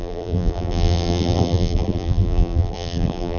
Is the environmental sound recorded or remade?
remade